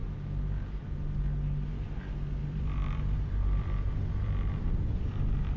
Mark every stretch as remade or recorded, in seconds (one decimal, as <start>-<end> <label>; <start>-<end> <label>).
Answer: 0.0-1.7 recorded; 1.7-5.6 remade